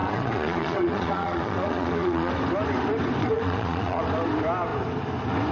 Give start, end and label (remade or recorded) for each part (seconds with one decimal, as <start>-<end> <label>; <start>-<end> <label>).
0.0-2.3 remade; 2.3-3.2 recorded; 3.2-4.0 remade; 4.0-5.5 recorded